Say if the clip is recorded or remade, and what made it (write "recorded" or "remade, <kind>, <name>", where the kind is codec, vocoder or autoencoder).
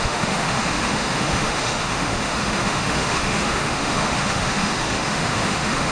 remade, autoencoder, DAC-VAE